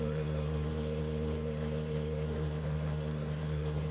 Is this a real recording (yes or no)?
no